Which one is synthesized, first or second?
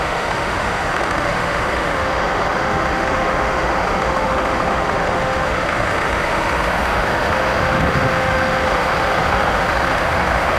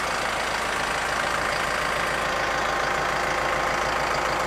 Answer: first